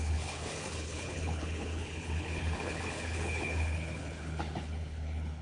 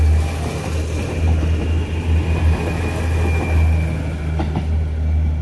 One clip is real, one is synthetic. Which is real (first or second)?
second